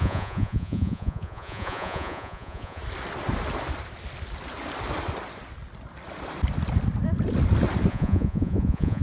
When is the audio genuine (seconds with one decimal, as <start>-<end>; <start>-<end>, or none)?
2.8-7.9